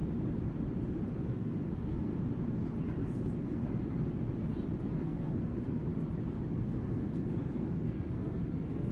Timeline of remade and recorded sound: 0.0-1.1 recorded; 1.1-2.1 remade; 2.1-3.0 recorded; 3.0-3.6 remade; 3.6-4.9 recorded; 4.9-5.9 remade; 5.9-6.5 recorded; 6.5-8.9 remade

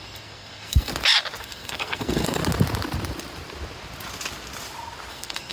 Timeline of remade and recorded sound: 0.0-0.9 remade; 0.9-1.4 recorded; 1.4-2.4 remade; 2.4-5.1 recorded; 5.1-5.5 remade

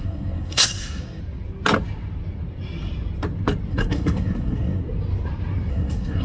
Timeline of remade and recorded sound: 0.0-1.2 remade; 1.2-3.7 recorded; 3.7-4.8 remade; 4.8-5.7 recorded; 5.7-6.2 remade

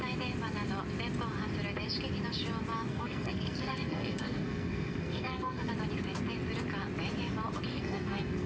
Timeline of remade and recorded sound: 0.0-2.9 recorded; 2.9-5.7 remade; 5.7-7.7 recorded; 7.7-8.5 remade

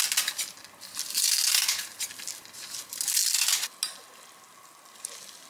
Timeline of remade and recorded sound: 0.0-5.5 recorded

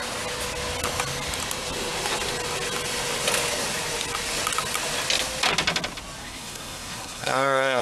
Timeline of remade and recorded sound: 0.0-6.2 recorded; 6.2-7.8 remade

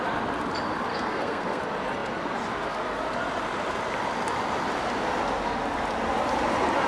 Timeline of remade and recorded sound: 0.0-0.9 recorded; 0.9-1.6 remade; 1.6-6.9 recorded

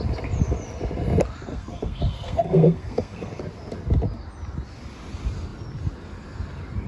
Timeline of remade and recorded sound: 0.0-1.5 recorded; 1.5-3.4 remade; 3.4-6.9 recorded